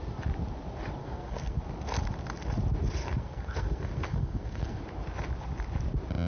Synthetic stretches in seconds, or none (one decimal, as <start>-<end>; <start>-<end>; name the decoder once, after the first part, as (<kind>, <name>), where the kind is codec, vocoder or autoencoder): 1.0-1.6 (codec, SNAC); 3.0-4.8